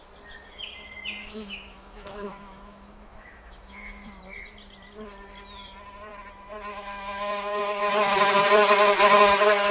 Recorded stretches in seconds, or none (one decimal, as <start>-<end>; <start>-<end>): 0.0-1.2; 4.2-6.7; 7.9-9.7